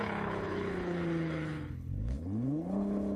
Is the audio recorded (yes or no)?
no